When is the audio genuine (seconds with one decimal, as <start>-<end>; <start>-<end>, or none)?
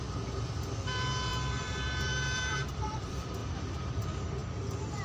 3.4-3.9; 4.4-5.0